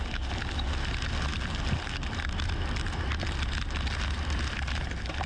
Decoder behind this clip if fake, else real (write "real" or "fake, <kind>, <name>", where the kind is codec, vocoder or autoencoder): real